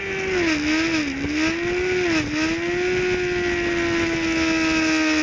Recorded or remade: recorded